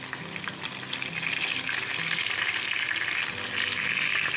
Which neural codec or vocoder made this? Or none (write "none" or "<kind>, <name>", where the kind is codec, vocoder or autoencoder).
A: none